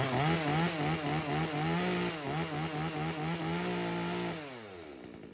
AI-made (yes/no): no